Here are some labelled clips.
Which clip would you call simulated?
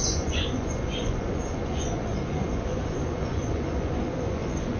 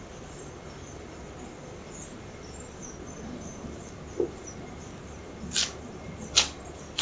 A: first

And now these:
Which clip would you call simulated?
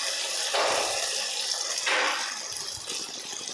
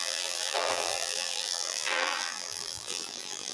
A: second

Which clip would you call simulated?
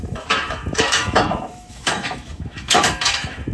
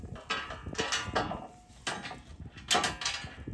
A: first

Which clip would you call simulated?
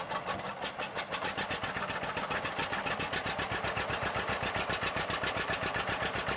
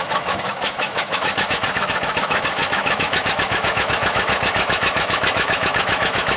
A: second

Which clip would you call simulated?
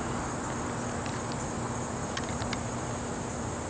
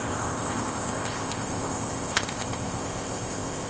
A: second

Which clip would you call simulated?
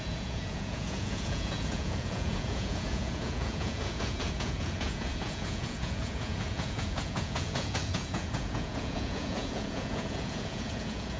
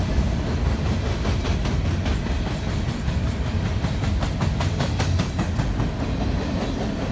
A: first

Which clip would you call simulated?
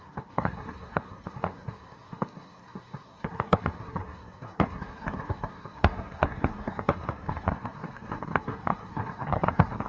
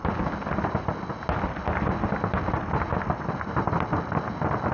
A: first